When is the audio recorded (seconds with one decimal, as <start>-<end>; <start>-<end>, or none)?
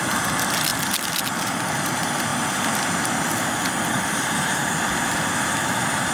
0.0-6.1